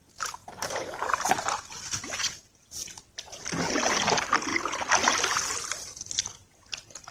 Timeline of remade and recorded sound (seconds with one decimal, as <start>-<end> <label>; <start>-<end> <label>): 0.0-0.4 recorded; 0.4-1.8 remade; 1.8-7.1 recorded